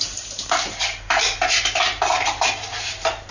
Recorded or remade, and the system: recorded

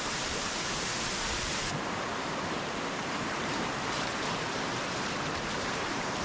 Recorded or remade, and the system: remade, vocoder, BigVGAN v2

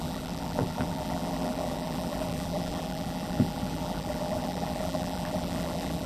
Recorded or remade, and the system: remade, vocoder, BigVGAN v2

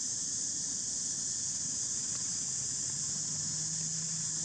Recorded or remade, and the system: recorded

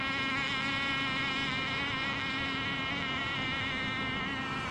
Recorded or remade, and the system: recorded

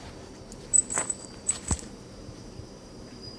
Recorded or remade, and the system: remade, vocoder, BigVGAN v2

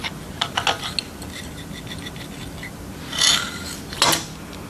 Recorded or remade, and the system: recorded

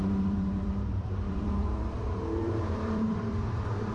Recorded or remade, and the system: remade, vocoder, BigVGAN v2